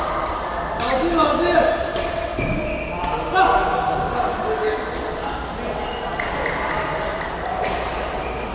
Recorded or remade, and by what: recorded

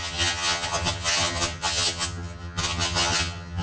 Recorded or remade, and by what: remade, vocoder, HiFi-GAN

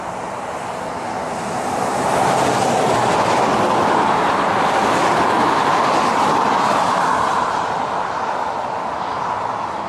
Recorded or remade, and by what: recorded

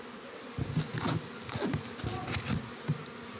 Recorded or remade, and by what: recorded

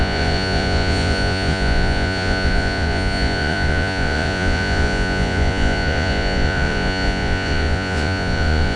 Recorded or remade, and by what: remade, vocoder, Vocos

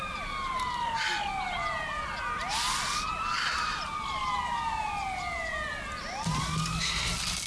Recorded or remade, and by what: recorded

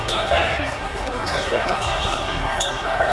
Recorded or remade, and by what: remade, codec, SNAC